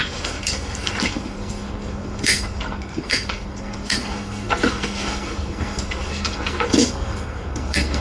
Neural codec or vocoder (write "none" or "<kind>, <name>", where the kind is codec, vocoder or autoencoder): codec, SNAC